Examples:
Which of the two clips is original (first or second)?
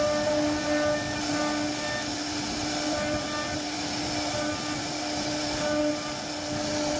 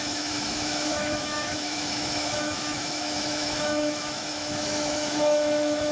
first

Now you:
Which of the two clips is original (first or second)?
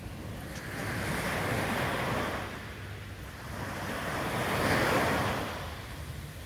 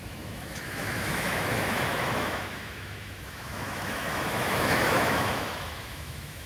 first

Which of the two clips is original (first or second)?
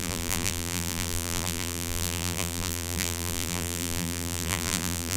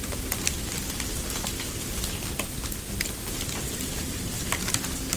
second